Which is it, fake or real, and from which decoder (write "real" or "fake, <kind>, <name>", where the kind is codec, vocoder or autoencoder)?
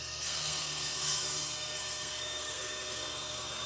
fake, codec, SNAC